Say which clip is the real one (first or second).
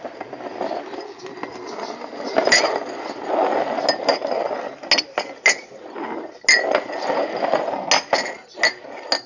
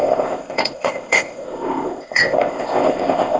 first